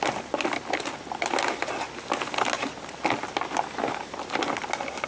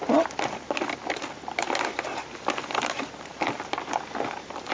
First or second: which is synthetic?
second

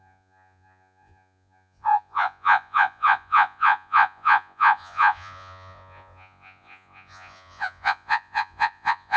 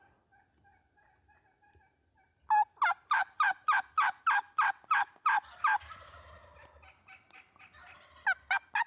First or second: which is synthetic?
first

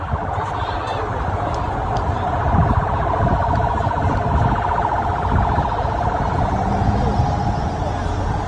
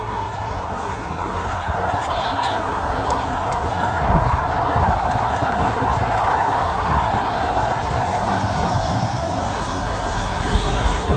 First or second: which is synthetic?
second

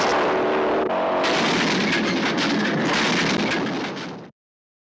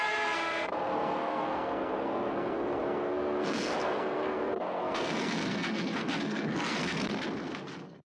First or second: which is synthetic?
second